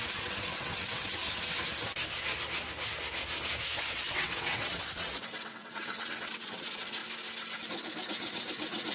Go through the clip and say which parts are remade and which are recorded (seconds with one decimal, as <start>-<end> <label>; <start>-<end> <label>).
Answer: 0.0-1.2 remade; 1.2-3.8 recorded; 3.8-7.0 remade; 7.0-8.1 recorded; 8.1-8.9 remade